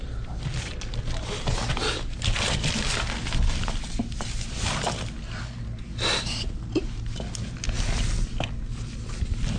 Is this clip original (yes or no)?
yes